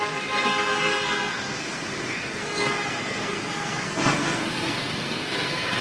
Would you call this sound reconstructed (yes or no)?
yes